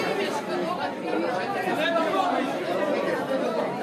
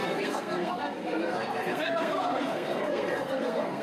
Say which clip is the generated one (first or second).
second